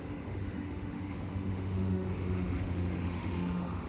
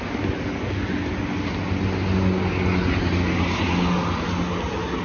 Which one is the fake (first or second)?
first